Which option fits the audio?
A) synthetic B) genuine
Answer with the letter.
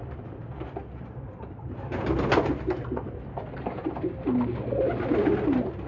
B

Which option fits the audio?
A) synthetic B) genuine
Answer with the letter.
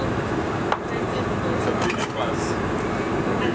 B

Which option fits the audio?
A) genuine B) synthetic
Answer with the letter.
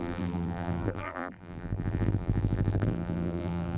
B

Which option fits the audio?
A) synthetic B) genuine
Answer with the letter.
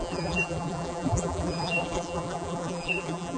A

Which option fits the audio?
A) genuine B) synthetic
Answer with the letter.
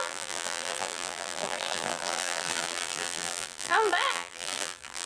B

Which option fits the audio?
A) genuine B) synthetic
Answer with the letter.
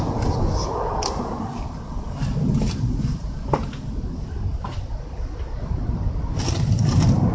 A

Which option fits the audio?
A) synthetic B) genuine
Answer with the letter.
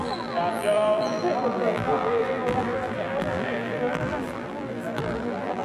A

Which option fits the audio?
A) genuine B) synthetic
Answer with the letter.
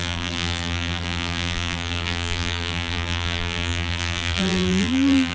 B